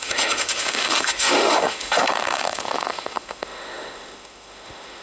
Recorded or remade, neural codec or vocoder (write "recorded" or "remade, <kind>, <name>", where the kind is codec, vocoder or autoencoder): remade, autoencoder, DAC-VAE